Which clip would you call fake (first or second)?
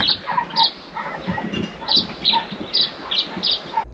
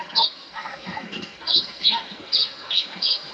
second